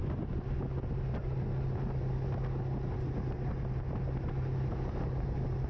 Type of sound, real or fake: real